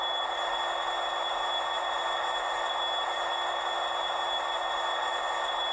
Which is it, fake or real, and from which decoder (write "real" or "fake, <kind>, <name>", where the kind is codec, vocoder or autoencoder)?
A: real